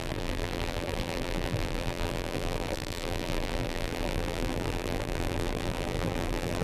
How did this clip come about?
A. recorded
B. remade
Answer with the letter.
B